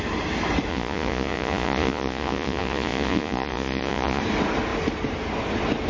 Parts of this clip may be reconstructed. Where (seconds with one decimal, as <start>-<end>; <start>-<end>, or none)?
0.7-4.2